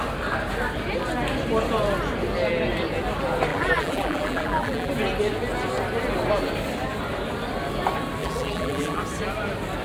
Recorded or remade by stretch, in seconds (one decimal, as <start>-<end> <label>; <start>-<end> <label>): 0.0-3.5 recorded; 3.5-4.9 remade; 4.9-8.2 recorded; 8.2-9.0 remade; 9.0-9.8 recorded